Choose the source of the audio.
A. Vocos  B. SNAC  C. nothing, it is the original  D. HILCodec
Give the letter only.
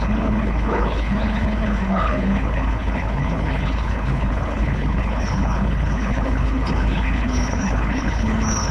D